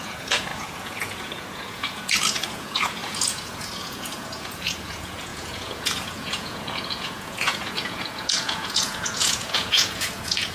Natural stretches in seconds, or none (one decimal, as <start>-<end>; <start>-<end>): none